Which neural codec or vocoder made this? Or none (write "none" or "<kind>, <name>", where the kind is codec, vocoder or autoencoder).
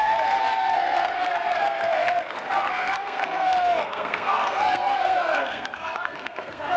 codec, SNAC